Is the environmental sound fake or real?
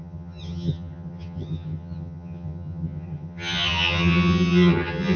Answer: fake